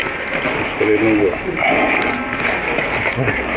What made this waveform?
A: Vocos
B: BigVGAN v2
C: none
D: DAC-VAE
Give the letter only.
C